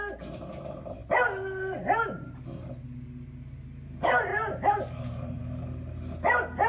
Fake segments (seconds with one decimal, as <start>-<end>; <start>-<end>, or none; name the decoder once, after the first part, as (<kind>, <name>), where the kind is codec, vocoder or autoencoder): 4.3-5.4 (vocoder, BigVGAN v2)